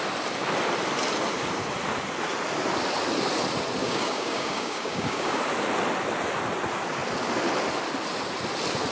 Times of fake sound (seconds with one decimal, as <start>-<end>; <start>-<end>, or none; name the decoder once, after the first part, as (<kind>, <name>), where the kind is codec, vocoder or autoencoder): 3.8-5.4 (codec, DAC)